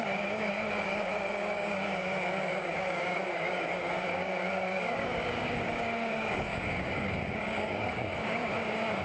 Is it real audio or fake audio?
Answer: fake